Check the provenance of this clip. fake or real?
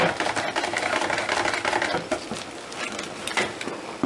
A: real